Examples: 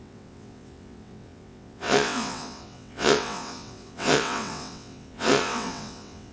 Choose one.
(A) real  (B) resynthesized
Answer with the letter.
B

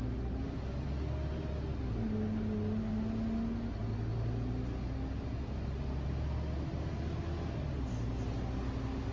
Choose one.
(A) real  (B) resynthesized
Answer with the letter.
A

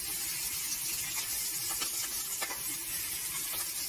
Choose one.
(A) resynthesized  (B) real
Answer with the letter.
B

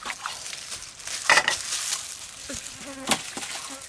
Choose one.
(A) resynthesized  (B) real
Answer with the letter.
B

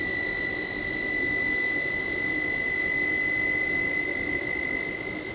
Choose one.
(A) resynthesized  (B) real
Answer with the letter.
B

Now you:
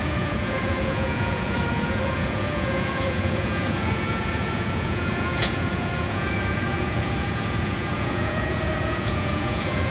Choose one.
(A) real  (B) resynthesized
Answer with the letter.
B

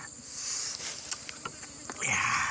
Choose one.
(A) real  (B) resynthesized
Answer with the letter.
A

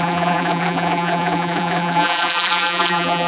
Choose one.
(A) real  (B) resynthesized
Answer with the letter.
B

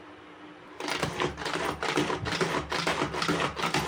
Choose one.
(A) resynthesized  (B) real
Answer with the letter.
B